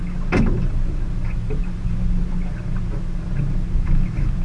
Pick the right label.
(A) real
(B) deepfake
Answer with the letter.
A